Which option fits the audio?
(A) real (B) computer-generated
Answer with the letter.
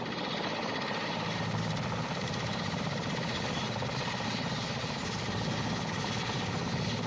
A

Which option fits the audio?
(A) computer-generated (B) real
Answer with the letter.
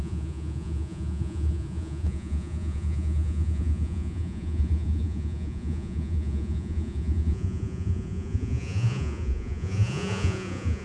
A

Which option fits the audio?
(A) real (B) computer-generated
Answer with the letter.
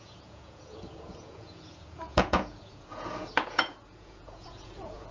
B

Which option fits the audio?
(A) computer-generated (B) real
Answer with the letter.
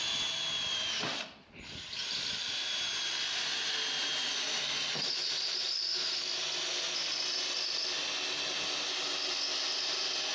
B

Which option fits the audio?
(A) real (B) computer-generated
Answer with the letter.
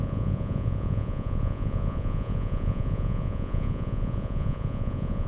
B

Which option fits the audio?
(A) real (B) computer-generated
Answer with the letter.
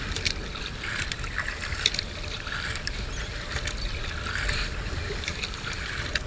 A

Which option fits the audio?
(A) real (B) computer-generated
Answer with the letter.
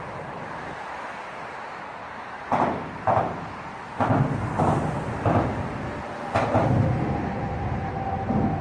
A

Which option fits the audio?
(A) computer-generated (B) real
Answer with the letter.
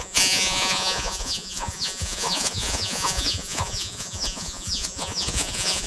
A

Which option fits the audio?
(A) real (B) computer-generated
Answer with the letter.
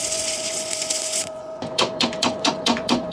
B